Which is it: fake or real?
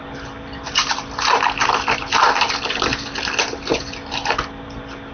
real